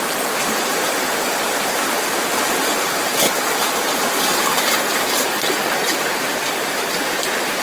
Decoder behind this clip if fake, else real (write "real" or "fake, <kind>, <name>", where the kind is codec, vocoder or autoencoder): fake, vocoder, BigVGAN v2